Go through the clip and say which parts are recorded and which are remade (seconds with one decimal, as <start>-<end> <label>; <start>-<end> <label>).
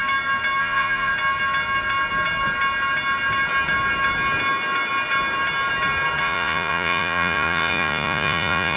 0.0-0.6 recorded; 0.6-1.1 remade; 1.1-6.2 recorded; 6.2-8.8 remade